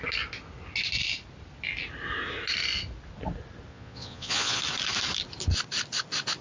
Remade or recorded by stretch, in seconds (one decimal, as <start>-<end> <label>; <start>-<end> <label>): 0.0-3.7 recorded; 3.7-4.6 remade; 4.6-6.4 recorded